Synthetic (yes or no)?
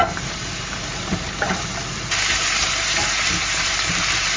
yes